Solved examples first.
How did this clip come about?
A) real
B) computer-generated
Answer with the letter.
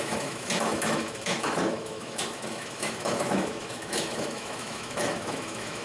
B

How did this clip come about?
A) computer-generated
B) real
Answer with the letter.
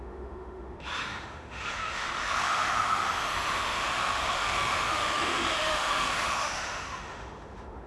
A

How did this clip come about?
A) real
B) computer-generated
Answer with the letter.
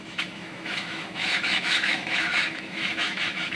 B